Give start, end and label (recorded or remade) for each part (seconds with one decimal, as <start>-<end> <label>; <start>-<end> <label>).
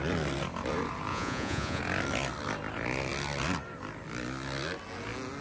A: 0.0-1.1 recorded; 1.1-1.8 remade; 1.8-5.4 recorded